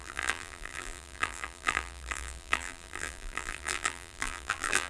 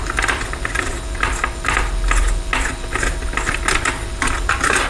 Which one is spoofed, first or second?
first